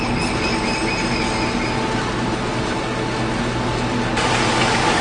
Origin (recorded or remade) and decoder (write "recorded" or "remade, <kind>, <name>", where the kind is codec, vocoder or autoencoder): recorded